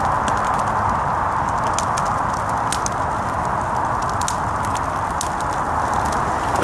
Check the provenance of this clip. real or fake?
real